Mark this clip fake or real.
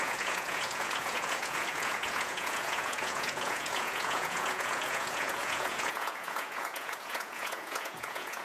fake